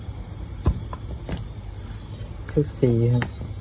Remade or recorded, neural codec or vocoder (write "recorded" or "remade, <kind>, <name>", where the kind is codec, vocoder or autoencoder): recorded